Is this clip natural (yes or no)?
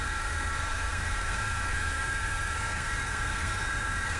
no